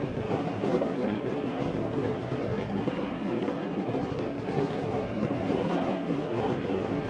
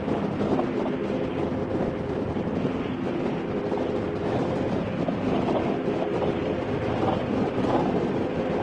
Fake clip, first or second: first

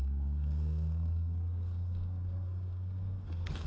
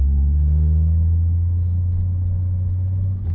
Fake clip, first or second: first